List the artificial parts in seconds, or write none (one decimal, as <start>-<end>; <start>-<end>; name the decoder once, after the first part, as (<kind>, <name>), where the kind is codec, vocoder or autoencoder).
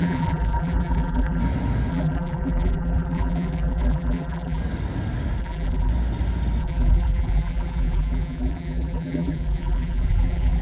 0.0-1.4 (vocoder, BigVGAN v2); 1.9-4.6; 5.4-5.9; 6.6-10.6